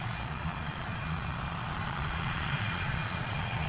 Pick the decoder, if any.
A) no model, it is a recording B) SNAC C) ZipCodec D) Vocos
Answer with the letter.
D